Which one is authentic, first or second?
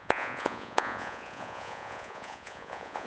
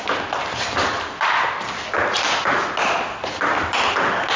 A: second